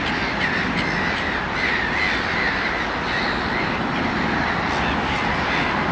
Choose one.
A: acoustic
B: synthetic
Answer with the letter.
A